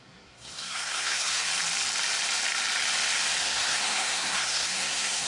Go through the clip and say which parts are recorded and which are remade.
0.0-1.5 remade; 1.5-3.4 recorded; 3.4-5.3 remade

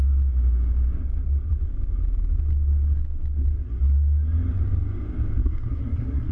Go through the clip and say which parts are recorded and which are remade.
0.0-5.4 recorded; 5.4-6.3 remade

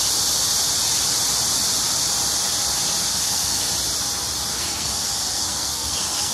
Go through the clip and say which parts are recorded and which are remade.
0.0-3.1 recorded; 3.1-3.6 remade; 3.6-4.5 recorded; 4.5-6.3 remade

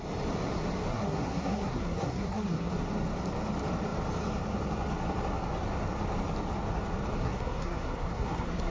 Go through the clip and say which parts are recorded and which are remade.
0.0-0.9 recorded; 0.9-2.7 remade; 2.7-7.2 recorded; 7.2-8.7 remade

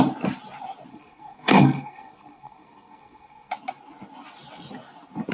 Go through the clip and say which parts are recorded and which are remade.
0.0-0.9 recorded; 0.9-3.5 remade; 3.5-5.3 recorded

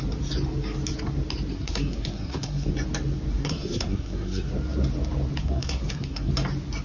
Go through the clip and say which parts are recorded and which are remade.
0.0-1.5 recorded; 1.5-2.7 remade; 2.7-3.3 recorded; 3.3-4.5 remade; 4.5-5.4 recorded; 5.4-6.3 remade; 6.3-6.8 recorded

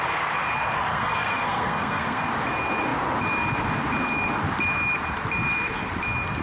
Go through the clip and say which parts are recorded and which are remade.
0.0-0.9 recorded; 0.9-2.2 remade; 2.2-6.4 recorded

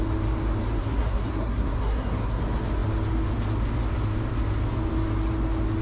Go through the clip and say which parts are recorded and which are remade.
0.0-0.8 recorded; 0.8-2.4 remade; 2.4-5.8 recorded